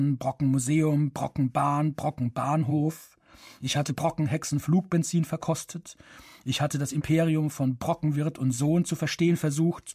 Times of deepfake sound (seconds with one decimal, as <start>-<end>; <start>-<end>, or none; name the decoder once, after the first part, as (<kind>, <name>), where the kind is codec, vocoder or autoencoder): 2.7-3.9 (codec, SNAC)